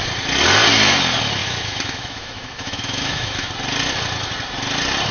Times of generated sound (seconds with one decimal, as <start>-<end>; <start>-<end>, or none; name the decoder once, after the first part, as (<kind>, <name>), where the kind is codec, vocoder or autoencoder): 1.4-3.5 (autoencoder, DAC-VAE)